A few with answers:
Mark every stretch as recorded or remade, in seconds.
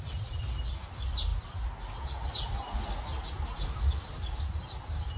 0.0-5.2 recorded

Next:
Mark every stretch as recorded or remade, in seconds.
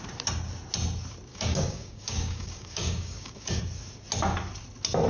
0.0-1.3 recorded; 1.3-3.6 remade; 3.6-5.1 recorded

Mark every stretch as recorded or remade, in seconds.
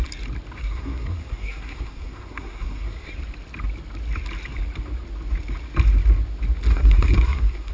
0.0-0.6 recorded; 0.6-3.1 remade; 3.1-6.7 recorded; 6.7-7.7 remade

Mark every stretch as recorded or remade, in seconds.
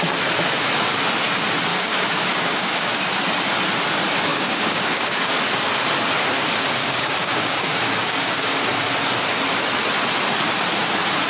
0.0-1.7 recorded; 1.7-3.0 remade; 3.0-4.3 recorded; 4.3-5.3 remade; 5.3-6.8 recorded; 6.8-8.6 remade; 8.6-11.3 recorded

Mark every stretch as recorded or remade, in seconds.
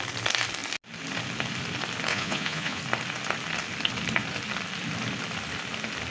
0.0-2.1 recorded; 2.1-2.8 remade; 2.8-6.1 recorded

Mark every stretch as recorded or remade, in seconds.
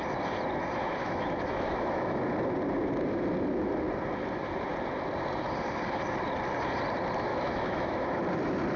0.0-1.0 recorded; 1.0-2.2 remade; 2.2-7.3 recorded; 7.3-8.2 remade; 8.2-8.8 recorded